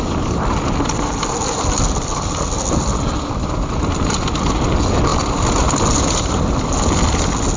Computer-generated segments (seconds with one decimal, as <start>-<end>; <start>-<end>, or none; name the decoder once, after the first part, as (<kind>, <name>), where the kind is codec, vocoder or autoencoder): none